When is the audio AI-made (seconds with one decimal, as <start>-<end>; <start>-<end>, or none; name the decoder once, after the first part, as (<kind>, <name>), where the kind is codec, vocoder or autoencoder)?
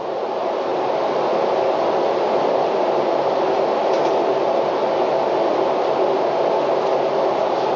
none